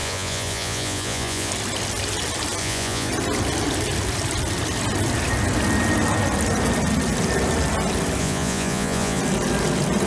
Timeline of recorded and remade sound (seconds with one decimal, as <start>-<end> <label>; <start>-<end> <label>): 0.0-1.5 remade; 1.5-2.6 recorded; 2.6-3.1 remade; 3.1-8.2 recorded; 8.2-9.2 remade; 9.2-10.1 recorded